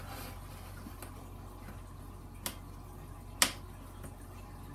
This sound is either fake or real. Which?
real